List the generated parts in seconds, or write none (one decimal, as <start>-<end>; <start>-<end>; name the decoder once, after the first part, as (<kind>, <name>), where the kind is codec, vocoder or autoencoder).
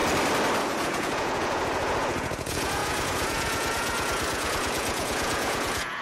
0.6-6.0 (vocoder, Vocos)